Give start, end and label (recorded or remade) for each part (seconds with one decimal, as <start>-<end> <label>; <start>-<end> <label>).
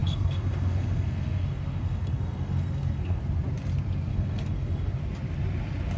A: 0.0-3.2 remade; 3.2-4.1 recorded; 4.1-4.9 remade; 4.9-6.0 recorded